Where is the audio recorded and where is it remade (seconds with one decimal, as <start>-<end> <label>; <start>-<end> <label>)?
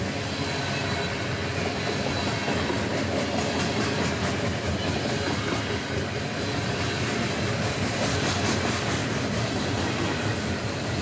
0.0-9.0 recorded; 9.0-11.0 remade